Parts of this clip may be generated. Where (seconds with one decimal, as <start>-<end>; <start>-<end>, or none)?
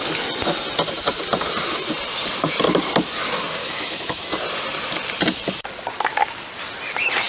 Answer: 3.6-4.2